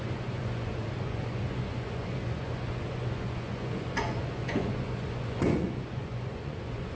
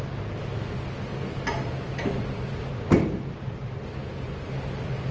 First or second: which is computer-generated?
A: first